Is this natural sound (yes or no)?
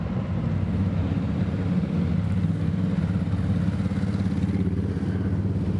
yes